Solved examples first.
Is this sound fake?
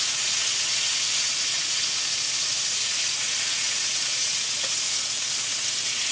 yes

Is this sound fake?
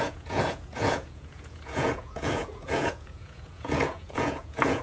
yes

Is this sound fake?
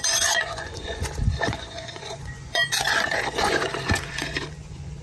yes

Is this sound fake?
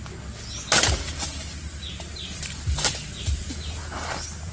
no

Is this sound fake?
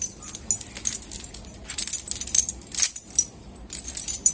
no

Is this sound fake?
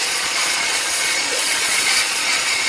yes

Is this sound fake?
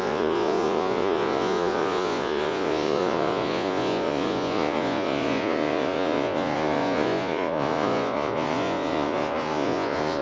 yes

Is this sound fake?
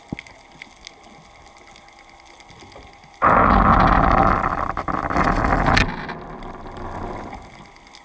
no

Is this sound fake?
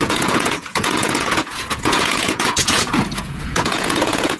yes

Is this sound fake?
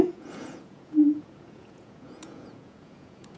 yes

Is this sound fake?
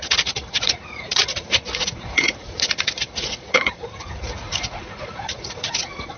yes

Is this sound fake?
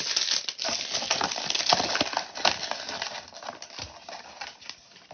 no